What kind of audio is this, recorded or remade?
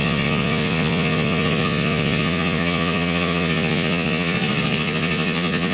remade